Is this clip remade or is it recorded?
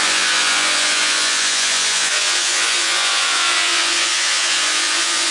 remade